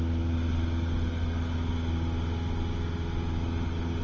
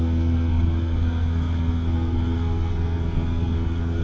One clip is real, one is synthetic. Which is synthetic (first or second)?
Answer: second